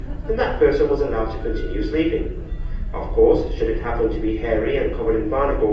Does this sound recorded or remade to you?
recorded